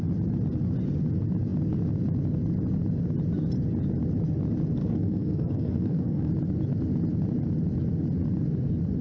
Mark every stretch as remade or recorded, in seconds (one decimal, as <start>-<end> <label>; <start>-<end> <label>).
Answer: 0.0-4.8 recorded; 4.8-6.3 remade; 6.3-9.0 recorded